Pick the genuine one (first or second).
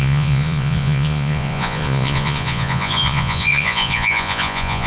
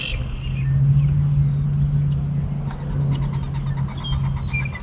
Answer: second